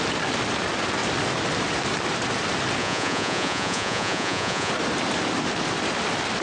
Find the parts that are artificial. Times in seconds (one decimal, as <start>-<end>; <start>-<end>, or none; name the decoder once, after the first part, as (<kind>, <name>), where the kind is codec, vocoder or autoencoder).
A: 2.8-4.7 (vocoder, Vocos)